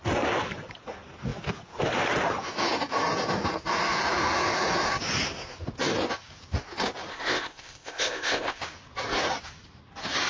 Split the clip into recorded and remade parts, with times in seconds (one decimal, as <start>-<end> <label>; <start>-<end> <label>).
0.0-7.1 recorded; 7.1-8.6 remade; 8.6-10.3 recorded